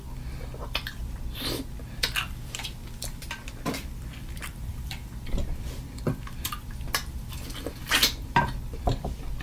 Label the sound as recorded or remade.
remade